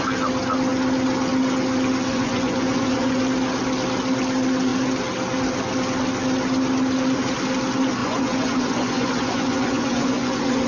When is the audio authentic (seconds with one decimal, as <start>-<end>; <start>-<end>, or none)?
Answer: 0.0-2.1; 3.2-8.0